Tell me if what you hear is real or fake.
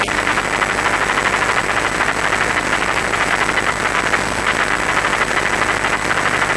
real